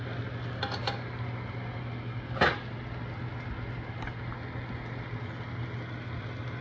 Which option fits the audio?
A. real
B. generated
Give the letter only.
A